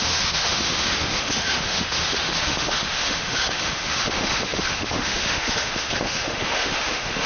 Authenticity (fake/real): fake